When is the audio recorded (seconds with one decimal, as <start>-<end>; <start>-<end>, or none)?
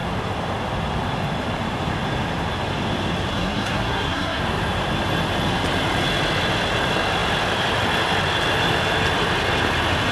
0.0-3.3; 4.4-10.1